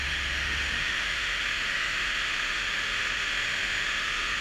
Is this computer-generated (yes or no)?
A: yes